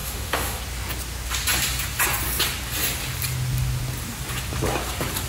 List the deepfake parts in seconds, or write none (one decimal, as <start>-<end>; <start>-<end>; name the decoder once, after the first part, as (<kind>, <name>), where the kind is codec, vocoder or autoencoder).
0.0-0.6 (autoencoder, DAC-VAE)